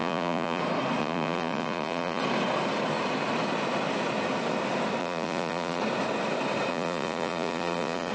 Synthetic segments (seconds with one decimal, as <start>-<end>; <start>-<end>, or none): 0.0-0.6; 1.0-2.2; 5.0-5.8; 6.7-8.1